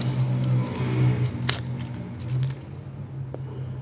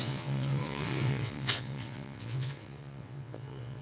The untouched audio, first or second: first